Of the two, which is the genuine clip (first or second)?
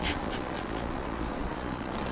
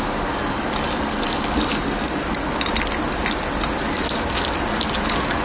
second